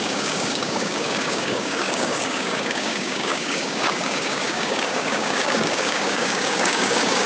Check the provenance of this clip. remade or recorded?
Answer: remade